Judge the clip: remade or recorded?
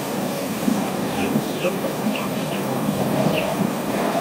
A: remade